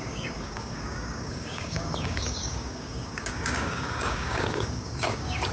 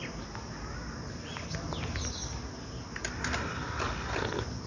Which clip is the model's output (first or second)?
first